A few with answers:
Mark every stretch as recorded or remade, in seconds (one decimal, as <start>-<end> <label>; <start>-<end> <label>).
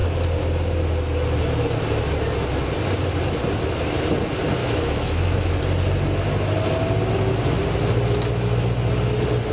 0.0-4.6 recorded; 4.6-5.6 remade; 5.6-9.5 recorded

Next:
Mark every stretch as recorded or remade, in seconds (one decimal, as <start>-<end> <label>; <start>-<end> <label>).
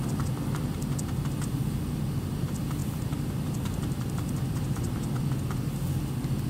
0.0-2.8 recorded; 2.8-5.2 remade; 5.2-6.5 recorded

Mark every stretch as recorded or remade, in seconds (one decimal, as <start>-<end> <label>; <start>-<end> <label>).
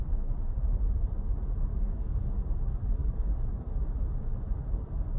0.0-1.7 recorded; 1.7-2.3 remade; 2.3-3.0 recorded; 3.0-3.8 remade; 3.8-5.2 recorded